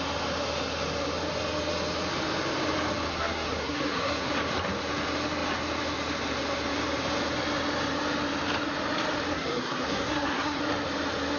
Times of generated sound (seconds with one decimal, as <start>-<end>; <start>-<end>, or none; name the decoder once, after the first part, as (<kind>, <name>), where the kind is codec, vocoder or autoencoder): 3.1-4.3 (codec, SNAC); 9.3-10.6